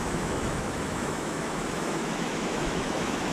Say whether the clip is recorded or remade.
remade